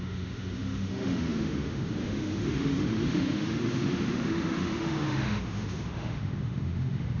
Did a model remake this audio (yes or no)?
yes